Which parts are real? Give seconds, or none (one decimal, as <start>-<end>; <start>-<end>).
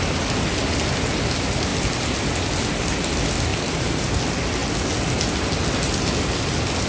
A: 0.0-3.5; 4.1-6.9